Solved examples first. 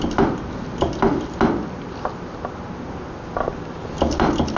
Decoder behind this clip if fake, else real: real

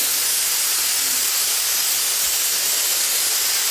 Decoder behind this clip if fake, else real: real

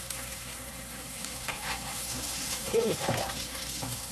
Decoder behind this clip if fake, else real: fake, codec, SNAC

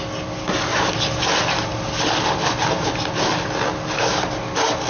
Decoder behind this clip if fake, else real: real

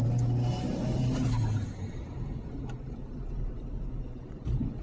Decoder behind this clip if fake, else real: real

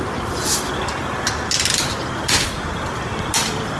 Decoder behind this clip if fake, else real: real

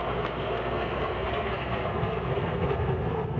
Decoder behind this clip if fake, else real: fake, codec, SNAC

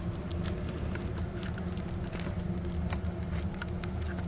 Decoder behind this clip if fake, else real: real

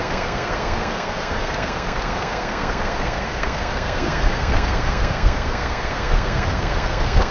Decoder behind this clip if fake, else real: fake, codec, SNAC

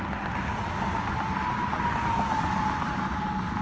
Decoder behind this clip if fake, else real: real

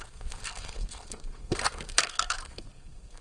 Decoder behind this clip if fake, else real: fake, codec, SNAC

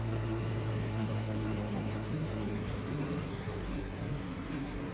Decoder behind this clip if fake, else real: fake, codec, SNAC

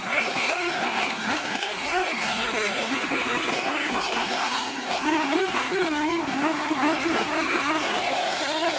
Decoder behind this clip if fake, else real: fake, codec, SNAC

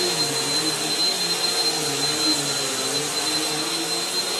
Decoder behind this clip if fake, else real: real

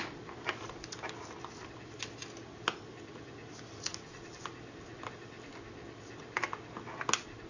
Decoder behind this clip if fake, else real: real